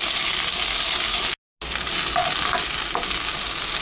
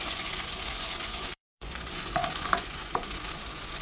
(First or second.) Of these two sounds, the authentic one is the first